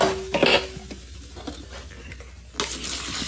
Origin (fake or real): real